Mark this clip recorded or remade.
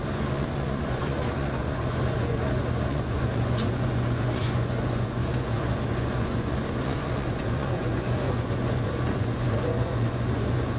remade